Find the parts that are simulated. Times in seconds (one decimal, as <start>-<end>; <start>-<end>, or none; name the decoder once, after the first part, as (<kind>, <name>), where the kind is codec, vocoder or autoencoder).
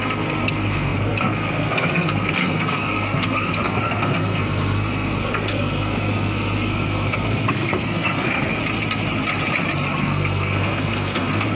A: 0.0-8.6 (codec, SNAC); 10.0-11.6